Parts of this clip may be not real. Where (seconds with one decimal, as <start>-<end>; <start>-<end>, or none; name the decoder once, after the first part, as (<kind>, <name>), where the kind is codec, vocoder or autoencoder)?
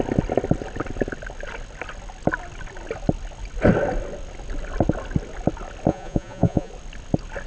5.9-6.7 (vocoder, Vocos)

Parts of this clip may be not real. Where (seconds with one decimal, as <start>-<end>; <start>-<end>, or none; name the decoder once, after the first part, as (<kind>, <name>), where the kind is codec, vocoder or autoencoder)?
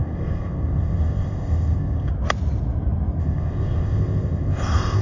0.0-2.1 (codec, ZipCodec); 3.2-5.0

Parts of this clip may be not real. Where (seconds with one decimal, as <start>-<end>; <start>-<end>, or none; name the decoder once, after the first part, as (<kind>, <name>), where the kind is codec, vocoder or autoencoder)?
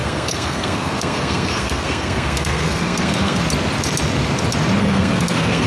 0.0-3.4 (codec, SNAC); 4.8-5.7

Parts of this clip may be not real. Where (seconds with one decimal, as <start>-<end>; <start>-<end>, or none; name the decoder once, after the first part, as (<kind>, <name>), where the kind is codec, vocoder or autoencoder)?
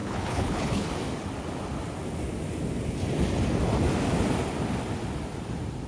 0.0-0.9 (codec, HILCodec)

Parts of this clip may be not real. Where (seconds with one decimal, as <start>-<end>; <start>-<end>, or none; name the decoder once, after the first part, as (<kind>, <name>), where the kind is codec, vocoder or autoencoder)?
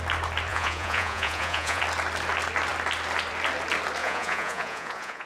0.5-1.8 (vocoder, Vocos); 4.0-5.3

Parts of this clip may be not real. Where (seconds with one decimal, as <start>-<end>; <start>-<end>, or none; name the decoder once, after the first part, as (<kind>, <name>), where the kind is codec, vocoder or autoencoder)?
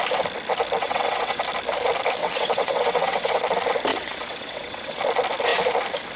0.8-1.4 (vocoder, WaveNeXt); 2.2-3.4; 3.9-5.0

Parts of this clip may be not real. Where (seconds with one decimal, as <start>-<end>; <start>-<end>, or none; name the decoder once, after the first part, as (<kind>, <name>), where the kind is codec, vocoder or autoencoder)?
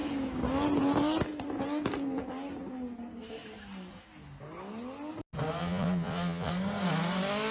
5.6-6.5 (vocoder, Vocos)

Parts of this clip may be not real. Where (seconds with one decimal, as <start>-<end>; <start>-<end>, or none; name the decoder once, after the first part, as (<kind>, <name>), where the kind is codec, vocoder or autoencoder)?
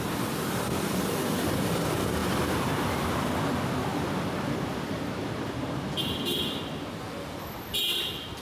2.2-2.8 (vocoder, BigVGAN v2); 3.9-6.6